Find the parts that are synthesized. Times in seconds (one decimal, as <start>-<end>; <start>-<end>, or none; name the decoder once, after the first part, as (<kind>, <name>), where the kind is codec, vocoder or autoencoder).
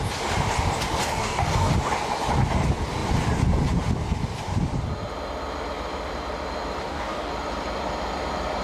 1.0-1.7 (codec, DAC); 6.8-7.3